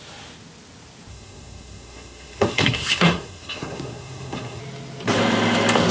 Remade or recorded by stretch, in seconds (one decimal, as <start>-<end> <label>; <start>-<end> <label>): 0.0-1.1 recorded; 1.1-4.6 remade; 4.6-5.9 recorded